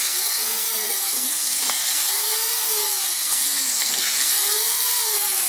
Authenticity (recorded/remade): remade